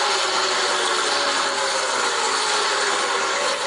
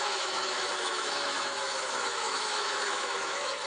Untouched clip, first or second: first